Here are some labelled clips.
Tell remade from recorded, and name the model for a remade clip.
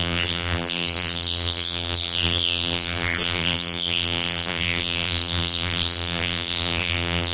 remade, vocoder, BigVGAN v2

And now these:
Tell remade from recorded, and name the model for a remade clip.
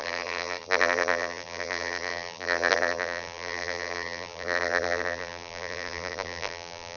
remade, vocoder, BigVGAN v2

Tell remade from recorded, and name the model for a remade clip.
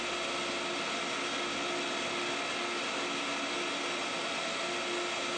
recorded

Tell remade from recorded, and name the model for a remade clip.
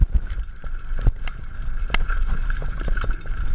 recorded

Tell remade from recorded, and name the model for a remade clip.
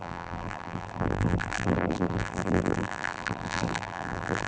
remade, vocoder, BigVGAN v2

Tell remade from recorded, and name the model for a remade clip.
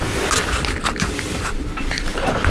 recorded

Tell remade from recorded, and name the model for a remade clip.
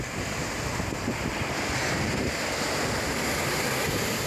recorded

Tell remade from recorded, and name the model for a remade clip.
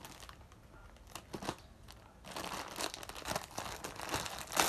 recorded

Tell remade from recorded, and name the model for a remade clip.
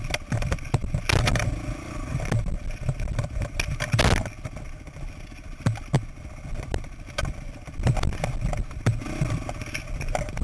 recorded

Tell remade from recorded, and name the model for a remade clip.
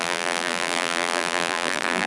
remade, vocoder, BigVGAN v2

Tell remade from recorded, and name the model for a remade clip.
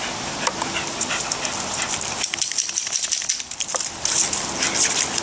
recorded